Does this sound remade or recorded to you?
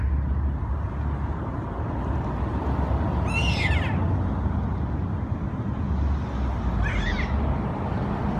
recorded